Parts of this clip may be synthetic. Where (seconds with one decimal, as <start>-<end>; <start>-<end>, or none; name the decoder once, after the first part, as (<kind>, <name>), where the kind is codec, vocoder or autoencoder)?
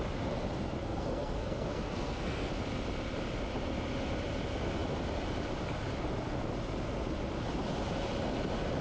0.8-2.5 (codec, SNAC)